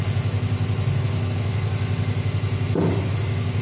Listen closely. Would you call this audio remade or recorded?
recorded